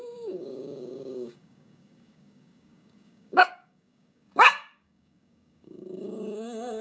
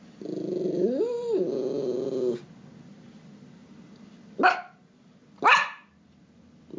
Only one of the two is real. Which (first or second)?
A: second